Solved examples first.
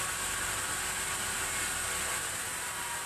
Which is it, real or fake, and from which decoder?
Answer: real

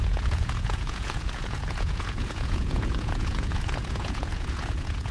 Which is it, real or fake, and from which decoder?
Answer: fake, vocoder, Vocos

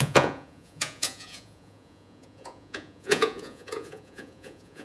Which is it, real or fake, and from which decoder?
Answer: fake, vocoder, Vocos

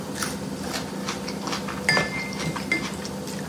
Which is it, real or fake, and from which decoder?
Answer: real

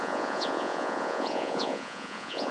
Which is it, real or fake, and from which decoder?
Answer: fake, vocoder, Vocos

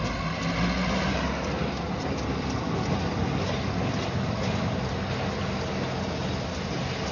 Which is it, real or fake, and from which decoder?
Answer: real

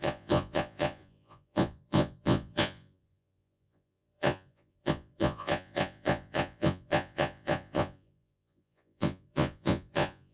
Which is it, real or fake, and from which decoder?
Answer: fake, vocoder, Vocos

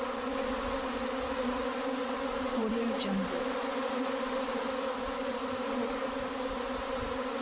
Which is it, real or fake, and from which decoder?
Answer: real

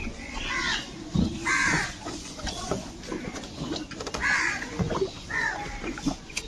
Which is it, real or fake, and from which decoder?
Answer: fake, vocoder, Vocos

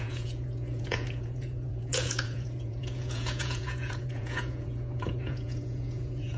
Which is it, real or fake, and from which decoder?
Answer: fake, vocoder, Vocos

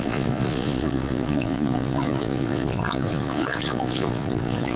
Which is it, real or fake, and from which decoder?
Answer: fake, vocoder, Vocos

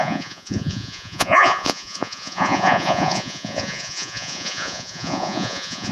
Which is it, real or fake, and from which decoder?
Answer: fake, vocoder, Vocos